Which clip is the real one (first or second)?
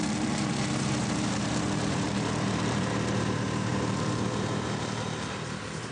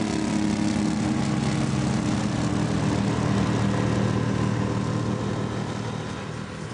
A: second